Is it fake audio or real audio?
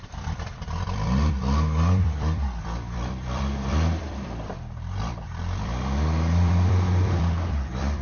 fake